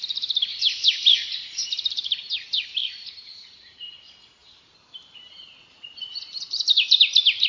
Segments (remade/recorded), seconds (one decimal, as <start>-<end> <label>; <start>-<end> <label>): 0.0-0.5 recorded; 0.5-2.3 remade; 2.3-2.8 recorded; 2.8-3.9 remade; 3.9-4.4 recorded; 4.4-7.0 remade; 7.0-7.5 recorded